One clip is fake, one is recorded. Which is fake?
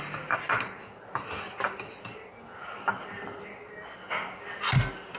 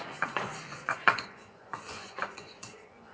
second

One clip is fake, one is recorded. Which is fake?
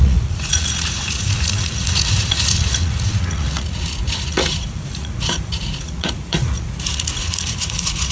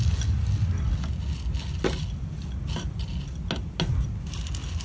first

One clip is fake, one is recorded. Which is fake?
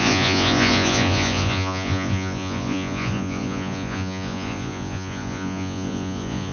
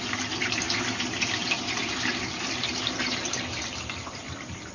first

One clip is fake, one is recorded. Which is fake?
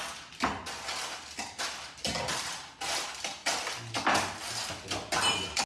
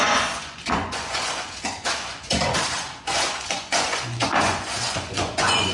second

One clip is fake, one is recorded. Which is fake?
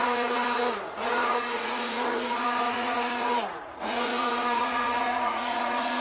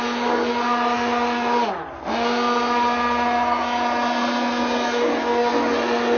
first